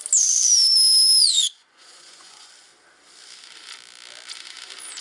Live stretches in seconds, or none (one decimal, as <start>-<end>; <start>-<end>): 0.0-1.2; 2.5-5.0